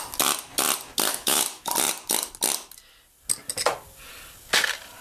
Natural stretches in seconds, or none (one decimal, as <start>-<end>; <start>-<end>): 0.0-1.1; 1.7-5.0